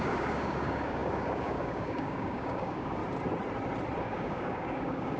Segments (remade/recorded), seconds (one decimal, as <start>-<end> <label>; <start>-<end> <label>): 0.0-3.0 remade; 3.0-4.0 recorded; 4.0-5.2 remade